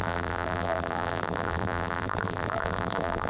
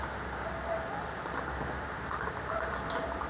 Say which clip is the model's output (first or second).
first